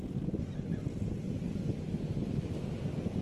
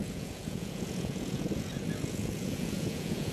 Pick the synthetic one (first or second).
second